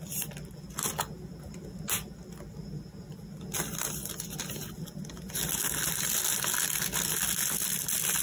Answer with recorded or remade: recorded